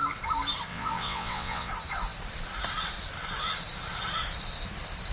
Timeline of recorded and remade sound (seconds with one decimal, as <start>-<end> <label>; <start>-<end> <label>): 0.0-0.7 recorded; 0.7-1.7 remade; 1.7-5.1 recorded